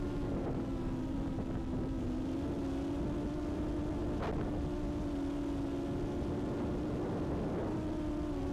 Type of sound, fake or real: real